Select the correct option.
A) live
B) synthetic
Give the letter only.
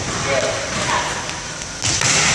A